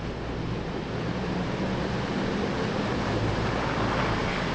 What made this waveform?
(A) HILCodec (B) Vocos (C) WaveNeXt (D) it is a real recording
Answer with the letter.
D